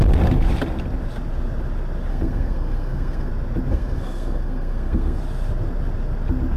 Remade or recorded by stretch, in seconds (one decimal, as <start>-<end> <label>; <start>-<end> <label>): 0.0-2.1 recorded; 2.1-3.3 remade; 3.3-3.7 recorded; 3.7-5.2 remade; 5.2-6.6 recorded